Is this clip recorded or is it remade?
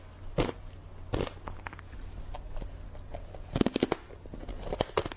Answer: recorded